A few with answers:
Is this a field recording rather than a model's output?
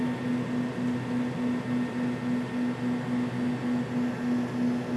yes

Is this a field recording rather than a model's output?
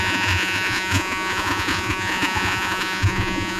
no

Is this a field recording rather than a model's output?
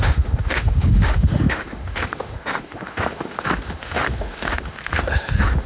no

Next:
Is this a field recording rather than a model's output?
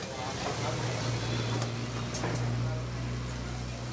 yes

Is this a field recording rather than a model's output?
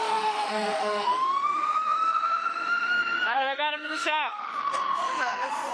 no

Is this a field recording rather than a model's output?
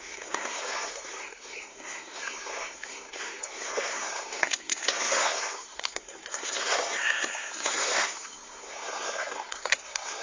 no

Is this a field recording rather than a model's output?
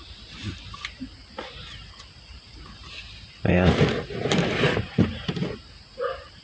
no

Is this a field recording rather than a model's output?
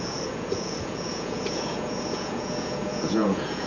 no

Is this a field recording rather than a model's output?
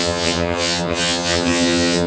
no